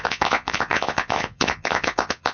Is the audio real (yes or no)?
no